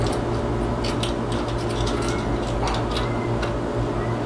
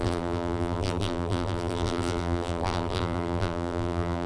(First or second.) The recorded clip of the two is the first